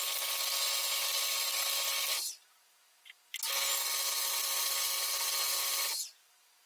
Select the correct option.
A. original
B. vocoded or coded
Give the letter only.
A